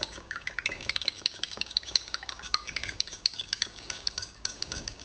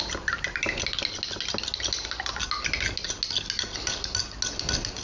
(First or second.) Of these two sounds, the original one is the second